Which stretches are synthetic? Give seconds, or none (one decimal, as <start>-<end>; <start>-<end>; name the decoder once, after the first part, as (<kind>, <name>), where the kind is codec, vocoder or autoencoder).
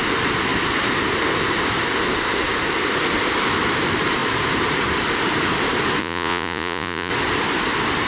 6.0-7.1 (vocoder, Vocos)